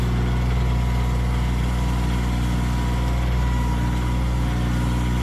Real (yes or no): yes